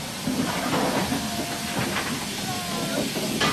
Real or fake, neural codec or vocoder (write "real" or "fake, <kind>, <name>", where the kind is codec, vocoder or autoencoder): real